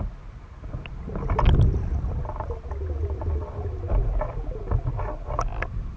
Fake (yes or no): no